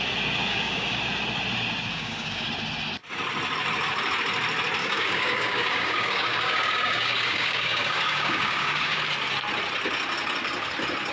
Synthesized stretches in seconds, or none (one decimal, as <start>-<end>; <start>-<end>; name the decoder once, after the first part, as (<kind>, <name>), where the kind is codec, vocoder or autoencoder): 0.5-1.0 (codec, DAC); 1.9-2.5; 4.8-9.0